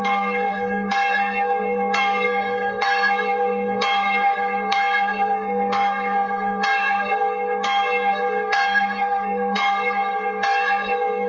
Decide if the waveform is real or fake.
fake